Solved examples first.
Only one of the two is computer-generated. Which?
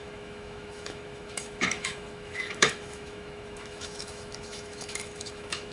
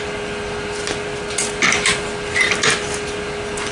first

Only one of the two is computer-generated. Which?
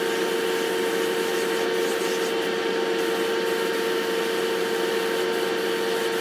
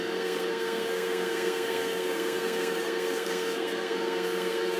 second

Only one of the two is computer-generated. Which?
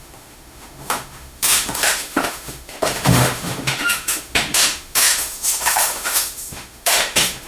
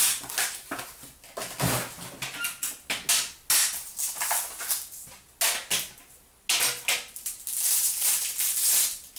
first